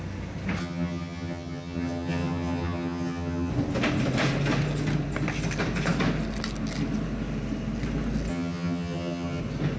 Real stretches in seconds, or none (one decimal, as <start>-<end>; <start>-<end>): 0.0-0.6; 3.5-8.3; 9.4-9.8